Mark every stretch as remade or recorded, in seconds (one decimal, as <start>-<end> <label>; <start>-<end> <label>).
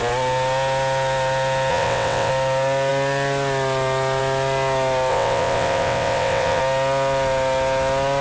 0.0-1.7 recorded; 1.7-2.3 remade; 2.3-5.1 recorded; 5.1-6.6 remade; 6.6-8.2 recorded